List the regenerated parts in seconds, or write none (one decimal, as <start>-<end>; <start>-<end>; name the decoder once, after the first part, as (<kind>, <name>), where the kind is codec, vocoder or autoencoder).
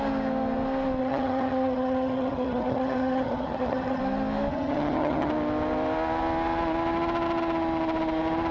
1.0-4.0 (vocoder, HiFi-GAN); 4.5-5.3